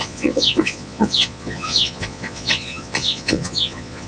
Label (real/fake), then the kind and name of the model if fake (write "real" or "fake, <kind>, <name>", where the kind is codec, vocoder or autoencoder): fake, vocoder, Vocos